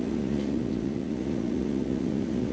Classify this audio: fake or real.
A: fake